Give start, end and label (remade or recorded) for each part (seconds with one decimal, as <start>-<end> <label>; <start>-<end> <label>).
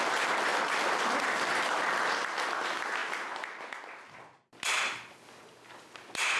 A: 0.0-6.4 recorded